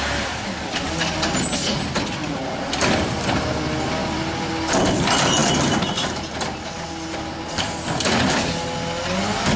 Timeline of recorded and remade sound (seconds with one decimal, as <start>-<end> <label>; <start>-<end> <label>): 0.0-2.2 recorded; 2.2-3.0 remade; 3.0-4.0 recorded; 4.0-4.5 remade; 4.5-9.6 recorded